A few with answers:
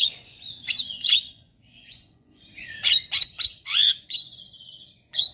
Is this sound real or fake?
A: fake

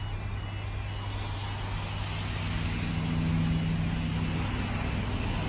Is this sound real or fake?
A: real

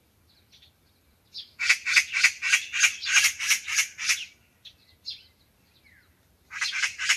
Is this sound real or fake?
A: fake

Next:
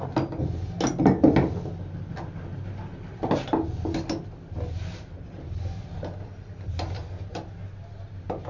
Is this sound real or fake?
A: real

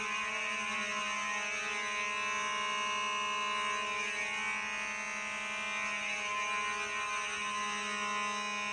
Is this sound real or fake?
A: real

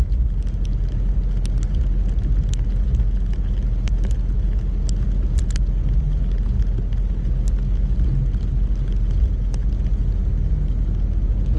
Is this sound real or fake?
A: real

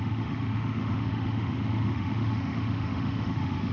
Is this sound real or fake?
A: fake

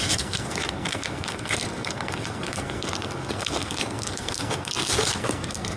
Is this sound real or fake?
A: fake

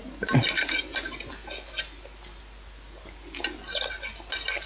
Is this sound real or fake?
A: real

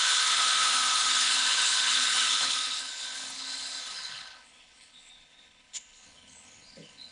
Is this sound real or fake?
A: fake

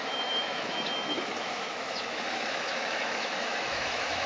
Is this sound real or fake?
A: fake